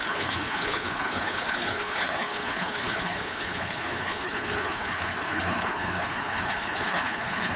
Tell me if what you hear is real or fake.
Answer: fake